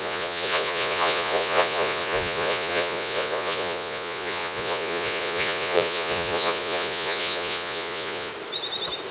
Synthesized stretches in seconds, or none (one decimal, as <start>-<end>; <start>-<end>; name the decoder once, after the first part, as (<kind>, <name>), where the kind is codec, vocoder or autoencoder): 0.0-8.3 (vocoder, Vocos)